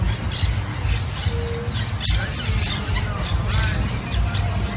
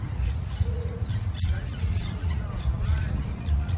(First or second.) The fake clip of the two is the second